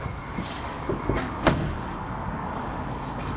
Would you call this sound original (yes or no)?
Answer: no